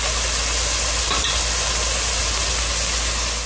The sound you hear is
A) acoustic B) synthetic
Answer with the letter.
A